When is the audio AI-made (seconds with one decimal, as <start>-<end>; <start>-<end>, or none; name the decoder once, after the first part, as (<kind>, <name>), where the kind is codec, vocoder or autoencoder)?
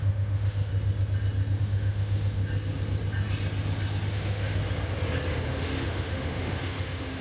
0.0-0.7 (autoencoder, DAC-VAE); 1.6-2.4; 4.1-4.6; 5.3-7.2